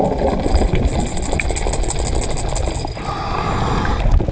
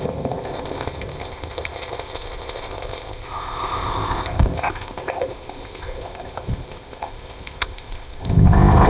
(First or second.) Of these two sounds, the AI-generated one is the second